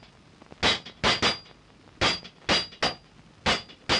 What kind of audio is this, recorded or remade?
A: recorded